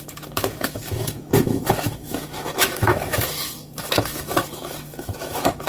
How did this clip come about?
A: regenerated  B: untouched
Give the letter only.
A